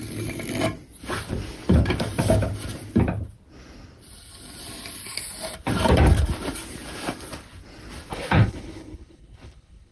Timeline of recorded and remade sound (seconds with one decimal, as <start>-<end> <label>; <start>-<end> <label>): 0.0-8.1 recorded; 8.1-9.9 remade